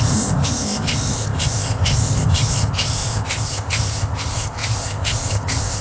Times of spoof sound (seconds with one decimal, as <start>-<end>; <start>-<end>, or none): 0.0-5.8